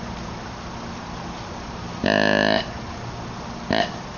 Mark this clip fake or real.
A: real